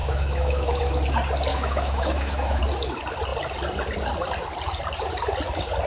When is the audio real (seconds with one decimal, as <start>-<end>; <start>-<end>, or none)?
0.8-1.5; 2.6-5.9